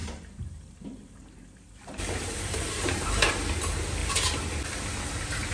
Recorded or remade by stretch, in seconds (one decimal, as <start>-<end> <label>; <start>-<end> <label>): 0.0-3.3 remade; 3.3-4.0 recorded; 4.0-4.6 remade; 4.6-5.5 recorded